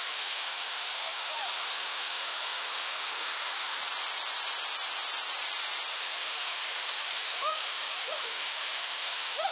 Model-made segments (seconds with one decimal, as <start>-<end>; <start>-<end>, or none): 0.0-3.8; 5.9-9.5